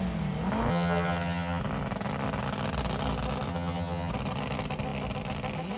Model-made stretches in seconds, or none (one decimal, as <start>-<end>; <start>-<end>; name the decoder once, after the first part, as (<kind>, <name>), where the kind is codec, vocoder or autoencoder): 0.7-1.6 (vocoder, HiFi-GAN); 3.5-4.1